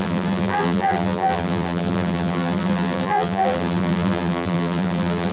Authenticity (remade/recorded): remade